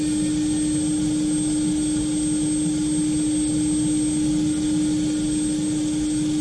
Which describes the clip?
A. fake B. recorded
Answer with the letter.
B